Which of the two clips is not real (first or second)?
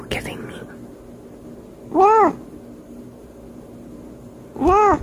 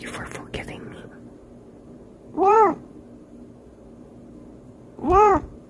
second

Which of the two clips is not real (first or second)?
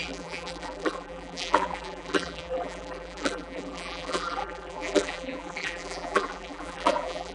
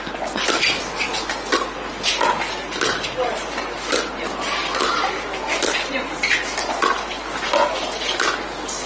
first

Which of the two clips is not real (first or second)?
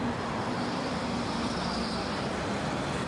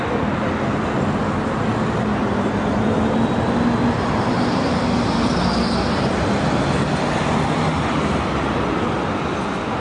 first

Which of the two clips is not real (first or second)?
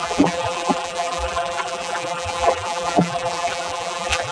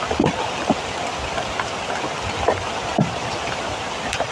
first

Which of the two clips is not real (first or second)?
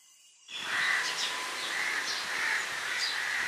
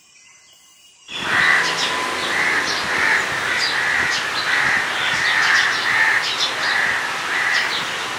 first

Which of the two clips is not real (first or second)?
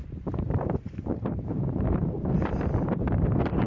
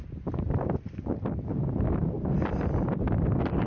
first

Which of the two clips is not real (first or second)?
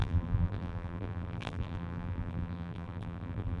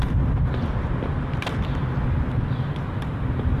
first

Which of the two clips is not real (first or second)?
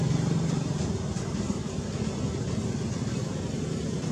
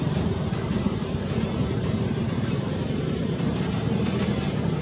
second